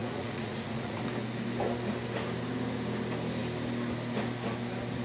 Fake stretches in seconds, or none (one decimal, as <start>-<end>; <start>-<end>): 0.0-1.0